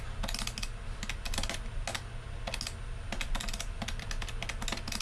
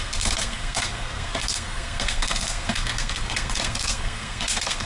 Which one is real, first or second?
first